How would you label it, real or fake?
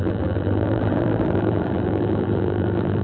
fake